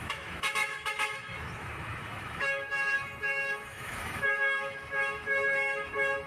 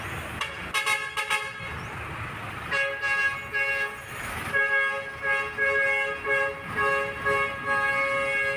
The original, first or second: second